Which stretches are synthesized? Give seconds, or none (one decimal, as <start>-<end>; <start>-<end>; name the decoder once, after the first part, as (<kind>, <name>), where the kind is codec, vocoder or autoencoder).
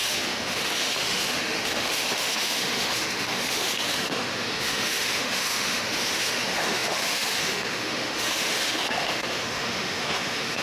0.0-10.6 (autoencoder, DAC-VAE)